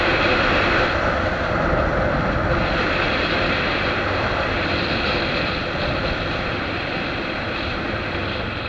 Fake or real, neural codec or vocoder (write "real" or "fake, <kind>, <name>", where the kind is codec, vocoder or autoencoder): real